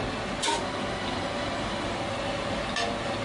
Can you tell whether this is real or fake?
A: real